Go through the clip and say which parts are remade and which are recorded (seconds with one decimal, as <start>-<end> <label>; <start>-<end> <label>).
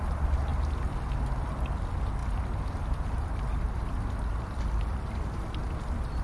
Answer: 0.0-2.2 recorded; 2.2-5.6 remade; 5.6-6.2 recorded